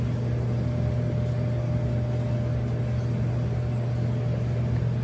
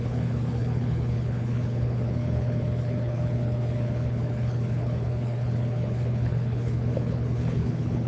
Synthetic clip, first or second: second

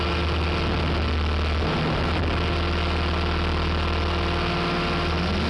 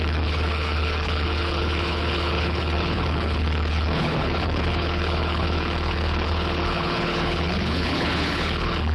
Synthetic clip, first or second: second